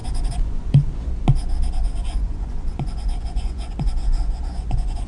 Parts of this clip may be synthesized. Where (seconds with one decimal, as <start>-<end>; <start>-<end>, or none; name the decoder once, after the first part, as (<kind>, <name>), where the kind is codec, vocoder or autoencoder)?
0.0-1.1 (vocoder, Vocos); 1.8-5.1